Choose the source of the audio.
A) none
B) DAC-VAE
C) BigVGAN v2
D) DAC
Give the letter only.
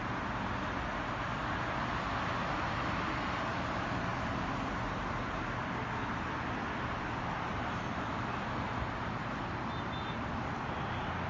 A